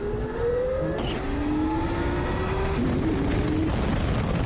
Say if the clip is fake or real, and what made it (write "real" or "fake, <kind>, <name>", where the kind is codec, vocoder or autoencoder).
real